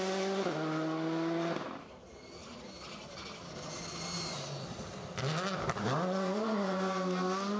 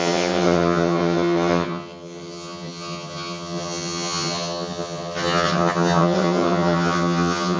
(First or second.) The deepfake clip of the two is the second